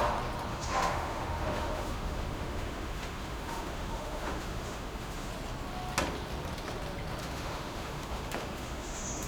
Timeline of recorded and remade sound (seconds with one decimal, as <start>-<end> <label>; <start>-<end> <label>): 0.0-0.5 recorded; 0.5-5.3 remade; 5.3-7.2 recorded; 7.2-9.3 remade